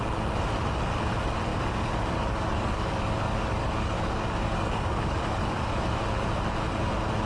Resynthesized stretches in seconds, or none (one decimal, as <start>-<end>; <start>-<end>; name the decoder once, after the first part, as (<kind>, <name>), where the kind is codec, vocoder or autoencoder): 1.5-5.9 (codec, DAC)